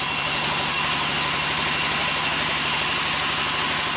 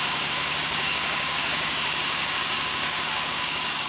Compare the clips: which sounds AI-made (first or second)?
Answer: second